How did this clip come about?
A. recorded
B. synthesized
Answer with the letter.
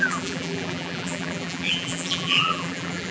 B